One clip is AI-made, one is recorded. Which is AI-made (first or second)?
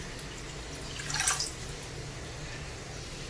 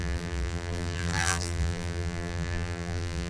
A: second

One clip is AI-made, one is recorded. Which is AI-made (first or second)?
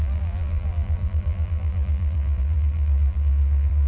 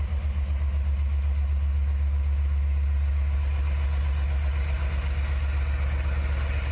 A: first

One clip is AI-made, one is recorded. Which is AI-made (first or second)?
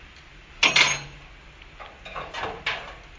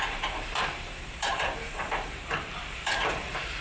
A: second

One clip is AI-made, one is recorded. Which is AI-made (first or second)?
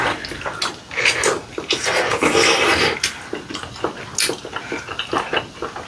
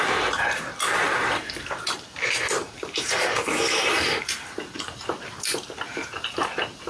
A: second